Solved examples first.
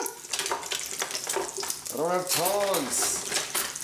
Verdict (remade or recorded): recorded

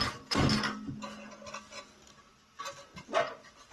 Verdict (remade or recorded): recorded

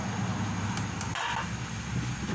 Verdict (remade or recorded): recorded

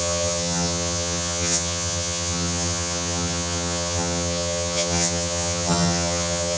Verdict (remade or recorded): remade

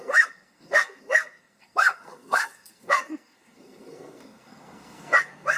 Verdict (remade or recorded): remade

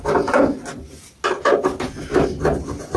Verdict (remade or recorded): recorded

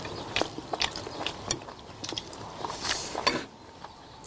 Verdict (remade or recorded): recorded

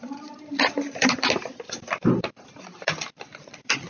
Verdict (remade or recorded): remade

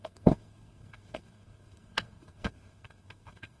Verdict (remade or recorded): remade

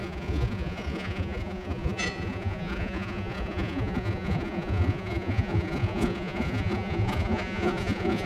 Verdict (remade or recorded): remade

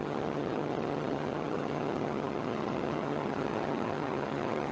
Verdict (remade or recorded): remade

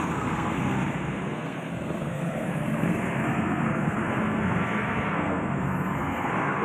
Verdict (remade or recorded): remade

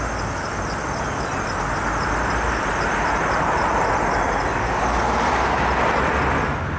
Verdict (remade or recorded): recorded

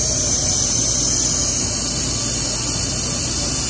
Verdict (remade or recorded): recorded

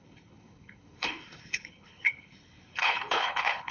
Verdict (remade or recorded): remade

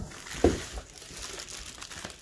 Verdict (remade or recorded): recorded